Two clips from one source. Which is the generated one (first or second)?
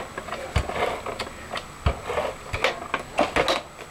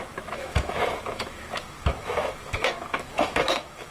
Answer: second